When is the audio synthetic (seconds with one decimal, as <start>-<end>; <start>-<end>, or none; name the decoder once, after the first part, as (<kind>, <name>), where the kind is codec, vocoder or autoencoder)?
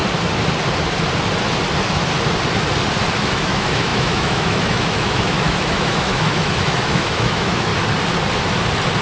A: 3.2-7.7 (autoencoder, DAC-VAE)